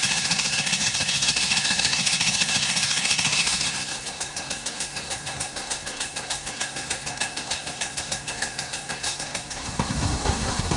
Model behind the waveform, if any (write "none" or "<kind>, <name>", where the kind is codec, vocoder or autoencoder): codec, SNAC